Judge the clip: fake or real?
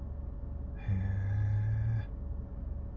real